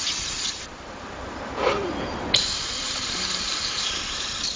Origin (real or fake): fake